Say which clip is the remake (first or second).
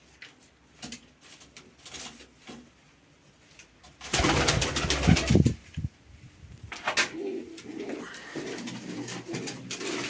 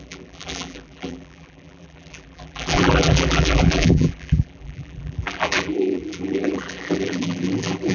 second